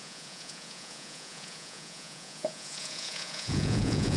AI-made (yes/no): yes